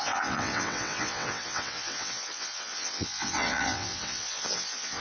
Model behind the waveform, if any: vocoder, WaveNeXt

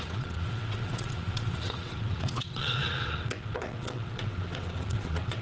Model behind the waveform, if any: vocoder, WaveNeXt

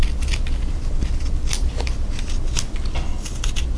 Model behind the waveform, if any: none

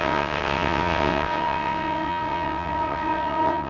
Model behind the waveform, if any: vocoder, WaveNeXt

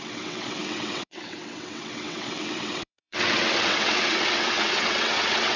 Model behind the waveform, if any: vocoder, WaveNeXt